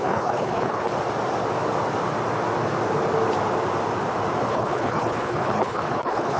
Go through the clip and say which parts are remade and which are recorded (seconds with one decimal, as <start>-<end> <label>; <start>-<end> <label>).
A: 0.0-0.9 remade; 0.9-4.5 recorded; 4.5-6.4 remade